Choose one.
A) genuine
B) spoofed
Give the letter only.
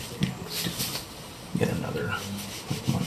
B